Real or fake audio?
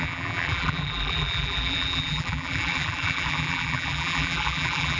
fake